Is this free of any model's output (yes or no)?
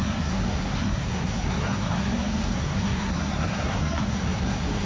no